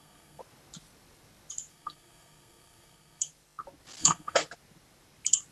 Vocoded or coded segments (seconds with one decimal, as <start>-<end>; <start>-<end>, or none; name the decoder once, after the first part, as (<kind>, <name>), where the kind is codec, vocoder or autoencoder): 0.0-0.4 (codec, SNAC); 1.7-3.3; 4.0-4.4